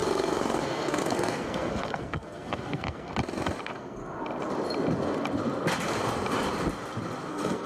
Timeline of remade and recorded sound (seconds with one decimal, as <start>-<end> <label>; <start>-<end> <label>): 0.0-3.1 remade; 3.1-3.6 recorded; 3.6-4.0 remade; 4.0-7.3 recorded; 7.3-7.7 remade